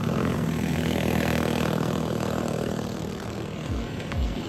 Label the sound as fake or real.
fake